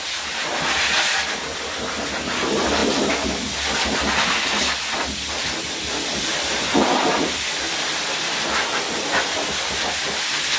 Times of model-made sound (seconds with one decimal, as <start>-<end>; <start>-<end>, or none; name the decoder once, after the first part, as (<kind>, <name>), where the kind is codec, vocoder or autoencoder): 0.0-2.8 (vocoder, BigVGAN v2); 4.1-10.6